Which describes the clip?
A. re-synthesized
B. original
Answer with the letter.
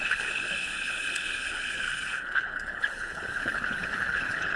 A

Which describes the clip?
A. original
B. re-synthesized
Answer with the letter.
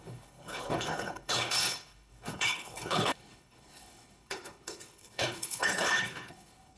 B